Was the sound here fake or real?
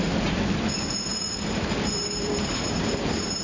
fake